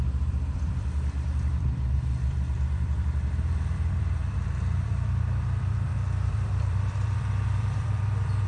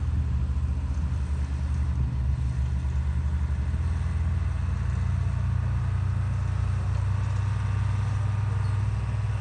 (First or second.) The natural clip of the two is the second